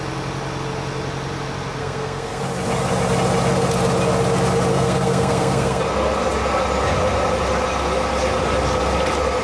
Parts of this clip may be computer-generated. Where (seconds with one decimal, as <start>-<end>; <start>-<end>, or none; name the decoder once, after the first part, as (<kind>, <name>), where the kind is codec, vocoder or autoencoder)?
1.8-2.4 (codec, SNAC); 4.7-5.8